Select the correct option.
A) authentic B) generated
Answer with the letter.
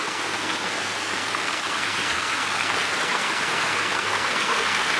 B